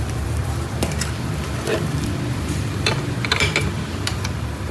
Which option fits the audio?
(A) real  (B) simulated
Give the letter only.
B